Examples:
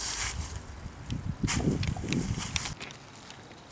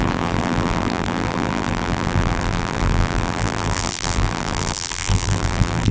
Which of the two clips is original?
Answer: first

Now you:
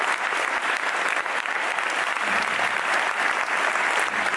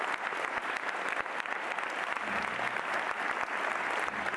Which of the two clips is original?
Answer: second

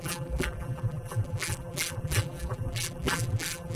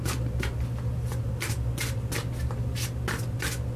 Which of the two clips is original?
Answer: second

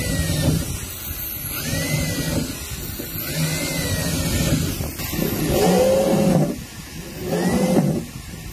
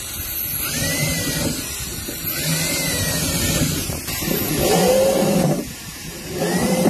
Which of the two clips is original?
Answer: first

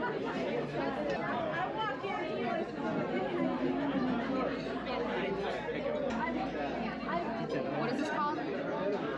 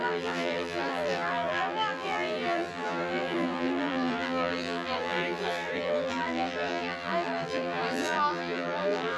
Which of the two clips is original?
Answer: first